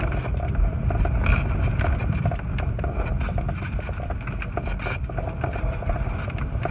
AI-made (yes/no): no